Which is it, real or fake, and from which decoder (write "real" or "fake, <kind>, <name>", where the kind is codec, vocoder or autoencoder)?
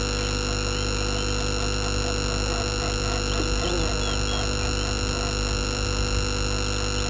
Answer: real